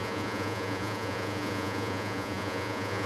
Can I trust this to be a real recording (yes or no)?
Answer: no